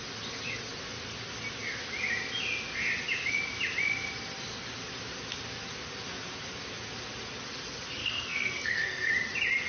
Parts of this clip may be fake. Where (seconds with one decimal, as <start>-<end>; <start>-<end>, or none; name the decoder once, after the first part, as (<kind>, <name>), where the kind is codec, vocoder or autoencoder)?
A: 8.0-9.1 (codec, SNAC)